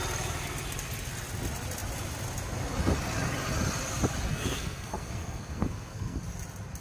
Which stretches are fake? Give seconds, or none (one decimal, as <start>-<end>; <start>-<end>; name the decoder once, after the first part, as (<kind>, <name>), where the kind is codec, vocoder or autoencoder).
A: 4.3-6.2 (codec, SNAC)